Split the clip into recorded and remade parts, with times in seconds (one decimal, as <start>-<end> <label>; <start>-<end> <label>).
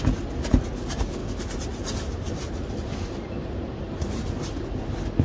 0.0-1.2 recorded; 1.2-4.3 remade; 4.3-5.2 recorded